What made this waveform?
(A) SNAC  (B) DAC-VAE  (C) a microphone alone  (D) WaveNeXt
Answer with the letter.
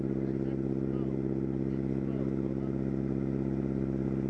C